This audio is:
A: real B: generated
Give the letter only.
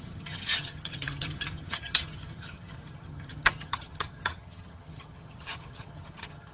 B